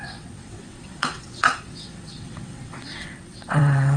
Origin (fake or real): fake